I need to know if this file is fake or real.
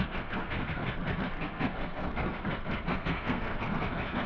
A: fake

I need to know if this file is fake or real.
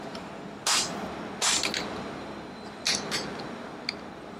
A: real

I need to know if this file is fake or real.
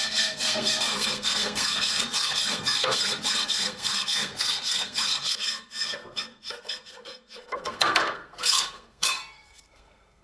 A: fake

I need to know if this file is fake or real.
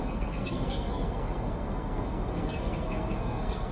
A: fake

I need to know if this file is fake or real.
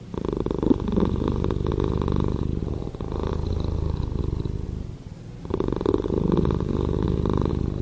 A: real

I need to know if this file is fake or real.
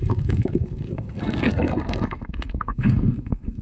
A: fake